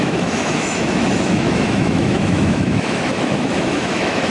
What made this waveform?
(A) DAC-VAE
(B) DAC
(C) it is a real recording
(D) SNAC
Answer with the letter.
A